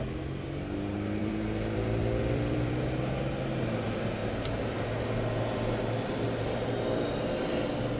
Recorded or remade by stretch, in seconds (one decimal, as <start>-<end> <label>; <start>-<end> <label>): 0.0-1.2 recorded; 1.2-3.0 remade; 3.0-4.2 recorded; 4.2-5.0 remade; 5.0-8.0 recorded